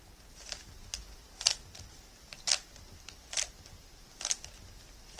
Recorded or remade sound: recorded